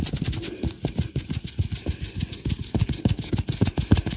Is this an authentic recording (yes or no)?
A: yes